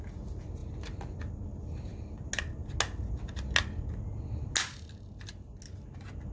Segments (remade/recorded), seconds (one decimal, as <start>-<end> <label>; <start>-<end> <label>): 0.0-6.3 recorded

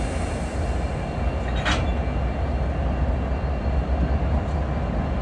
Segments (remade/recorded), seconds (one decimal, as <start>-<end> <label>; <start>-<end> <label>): 0.0-5.2 recorded

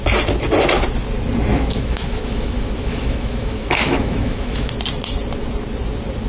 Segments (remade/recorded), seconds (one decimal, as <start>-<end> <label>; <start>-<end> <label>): 0.0-1.5 recorded; 1.5-4.7 remade; 4.7-6.3 recorded